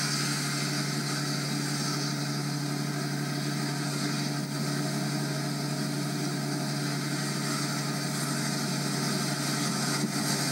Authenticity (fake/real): real